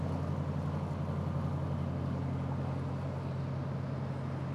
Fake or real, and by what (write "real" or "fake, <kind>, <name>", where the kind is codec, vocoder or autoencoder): real